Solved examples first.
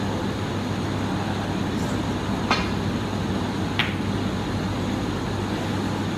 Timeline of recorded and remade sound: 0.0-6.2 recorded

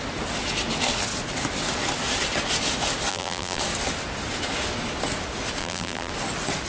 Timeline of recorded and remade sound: 0.0-3.1 recorded; 3.1-3.6 remade; 3.6-5.6 recorded; 5.6-6.1 remade; 6.1-6.7 recorded

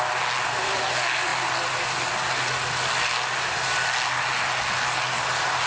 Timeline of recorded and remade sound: 0.0-5.7 recorded